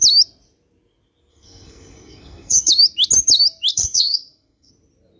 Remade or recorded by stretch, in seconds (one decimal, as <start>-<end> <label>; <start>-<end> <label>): 0.0-1.3 recorded; 1.3-2.7 remade; 2.7-3.7 recorded; 3.7-4.7 remade; 4.7-5.2 recorded